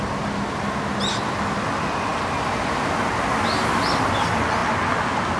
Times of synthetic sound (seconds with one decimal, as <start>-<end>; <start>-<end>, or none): none